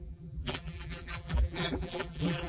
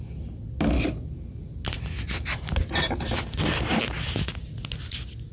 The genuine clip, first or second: second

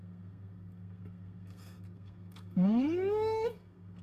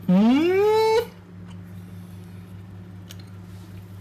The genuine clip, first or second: second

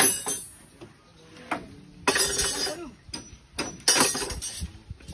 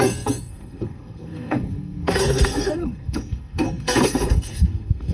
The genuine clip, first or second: first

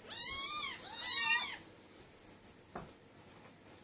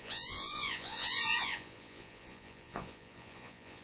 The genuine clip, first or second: first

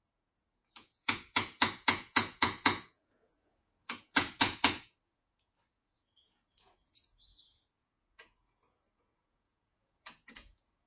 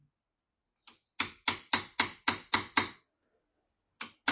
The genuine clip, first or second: second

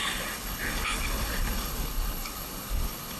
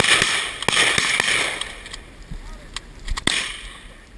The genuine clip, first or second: second